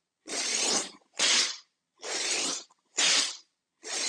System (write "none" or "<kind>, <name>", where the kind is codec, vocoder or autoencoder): vocoder, Vocos